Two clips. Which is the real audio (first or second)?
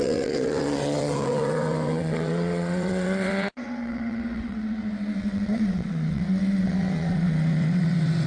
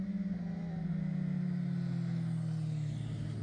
second